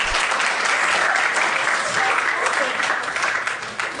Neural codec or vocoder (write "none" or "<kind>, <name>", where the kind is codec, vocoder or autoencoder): none